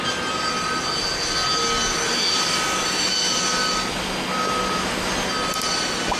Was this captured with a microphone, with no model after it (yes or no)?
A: yes